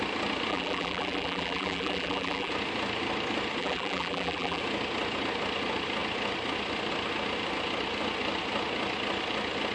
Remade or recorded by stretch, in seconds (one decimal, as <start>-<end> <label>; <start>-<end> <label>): 0.0-0.5 recorded; 0.5-2.5 remade; 2.5-3.6 recorded; 3.6-4.6 remade; 4.6-9.7 recorded